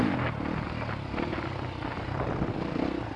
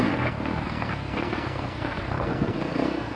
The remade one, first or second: second